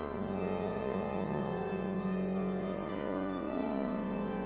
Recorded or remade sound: remade